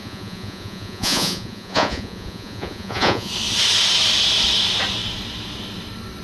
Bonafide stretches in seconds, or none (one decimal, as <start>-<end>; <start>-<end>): 3.3-6.2